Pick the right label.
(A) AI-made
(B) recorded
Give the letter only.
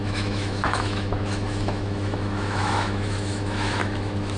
A